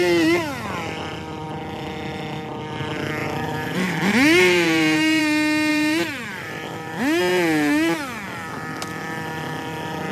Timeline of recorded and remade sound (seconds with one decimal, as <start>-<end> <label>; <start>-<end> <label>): 0.0-3.2 recorded; 3.2-5.2 remade; 5.2-5.7 recorded; 5.7-7.0 remade; 7.0-10.1 recorded

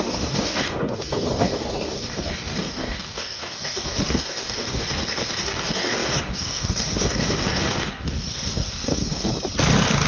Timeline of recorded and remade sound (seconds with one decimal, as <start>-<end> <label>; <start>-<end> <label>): 0.0-9.3 remade; 9.3-10.1 recorded

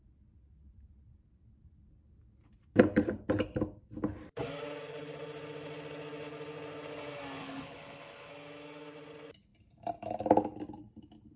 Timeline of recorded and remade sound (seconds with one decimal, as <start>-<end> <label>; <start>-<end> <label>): 0.0-7.4 recorded; 7.4-8.3 remade; 8.3-11.4 recorded